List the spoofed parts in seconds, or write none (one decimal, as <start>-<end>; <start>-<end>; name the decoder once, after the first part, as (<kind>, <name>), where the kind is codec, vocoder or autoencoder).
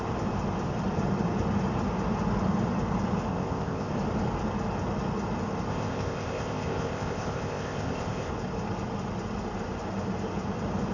3.3-3.9 (codec, ZipCodec); 5.7-8.3